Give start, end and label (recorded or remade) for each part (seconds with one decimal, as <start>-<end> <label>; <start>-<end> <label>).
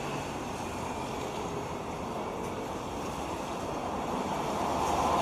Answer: 0.0-1.0 recorded; 1.0-3.3 remade; 3.3-3.8 recorded; 3.8-4.8 remade; 4.8-5.2 recorded